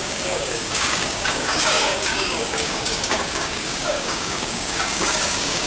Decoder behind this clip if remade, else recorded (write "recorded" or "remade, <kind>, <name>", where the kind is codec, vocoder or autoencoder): remade, codec, DAC